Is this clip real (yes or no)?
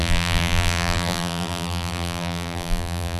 no